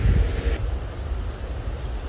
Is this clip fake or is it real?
real